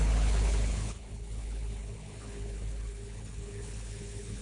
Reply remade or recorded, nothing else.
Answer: remade